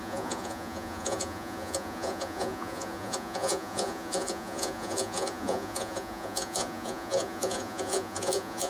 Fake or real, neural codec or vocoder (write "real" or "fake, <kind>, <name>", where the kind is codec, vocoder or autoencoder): fake, vocoder, Vocos